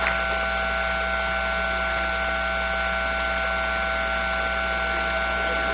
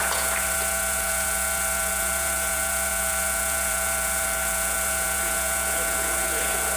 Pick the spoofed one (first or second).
second